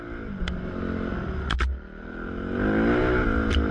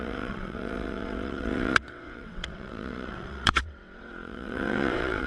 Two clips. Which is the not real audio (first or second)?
second